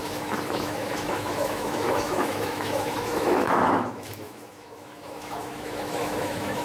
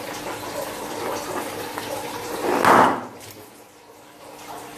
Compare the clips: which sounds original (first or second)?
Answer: second